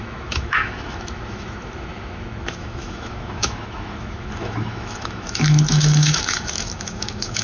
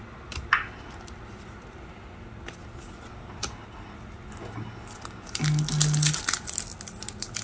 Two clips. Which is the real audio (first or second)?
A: second